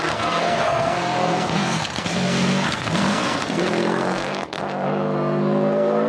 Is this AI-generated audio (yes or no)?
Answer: yes